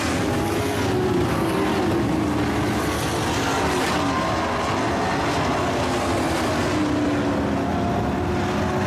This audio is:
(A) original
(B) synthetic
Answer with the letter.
A